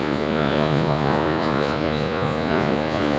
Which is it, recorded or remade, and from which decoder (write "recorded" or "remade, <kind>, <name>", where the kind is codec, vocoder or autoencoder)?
remade, vocoder, Vocos